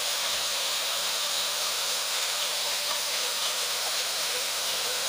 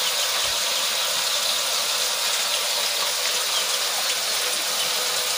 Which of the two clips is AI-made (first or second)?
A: first